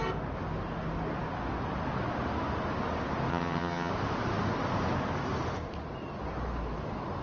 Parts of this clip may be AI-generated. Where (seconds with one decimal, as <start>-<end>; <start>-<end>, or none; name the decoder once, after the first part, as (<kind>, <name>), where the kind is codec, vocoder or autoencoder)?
3.3-3.9 (vocoder, HiFi-GAN)